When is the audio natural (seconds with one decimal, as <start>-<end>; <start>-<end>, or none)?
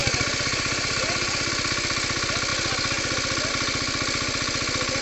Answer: 1.5-5.0